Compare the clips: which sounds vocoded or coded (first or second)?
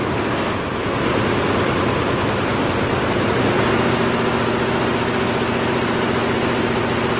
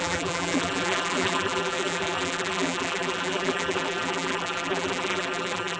second